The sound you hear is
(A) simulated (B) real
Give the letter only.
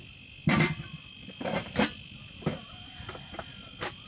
B